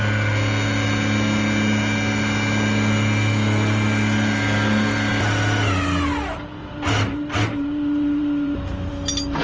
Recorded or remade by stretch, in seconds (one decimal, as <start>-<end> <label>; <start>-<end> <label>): 0.0-6.6 recorded; 6.6-8.9 remade; 8.9-9.4 recorded

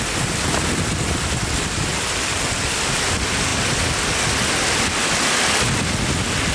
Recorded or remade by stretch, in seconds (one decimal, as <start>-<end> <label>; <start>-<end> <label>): 0.0-6.5 recorded

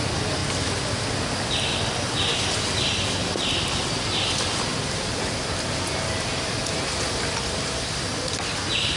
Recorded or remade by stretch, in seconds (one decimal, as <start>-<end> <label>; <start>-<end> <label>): 0.0-9.0 recorded

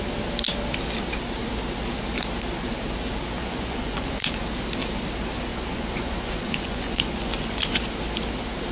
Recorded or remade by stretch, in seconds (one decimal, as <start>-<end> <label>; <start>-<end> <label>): 0.0-3.4 recorded; 3.4-4.3 remade; 4.3-5.5 recorded; 5.5-7.6 remade; 7.6-8.7 recorded

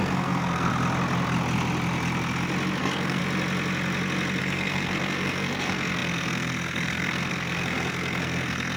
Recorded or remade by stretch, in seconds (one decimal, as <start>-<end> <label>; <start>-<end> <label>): 0.0-0.7 remade; 0.7-2.8 recorded; 2.8-3.2 remade; 3.2-4.4 recorded; 4.4-8.8 remade

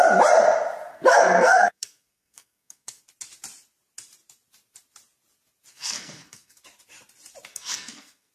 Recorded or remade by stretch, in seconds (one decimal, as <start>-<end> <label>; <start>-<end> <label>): 0.0-0.9 recorded; 0.9-3.0 remade; 3.0-5.7 recorded; 5.7-6.6 remade; 6.6-7.5 recorded; 7.5-8.3 remade